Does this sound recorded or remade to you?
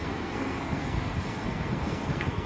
remade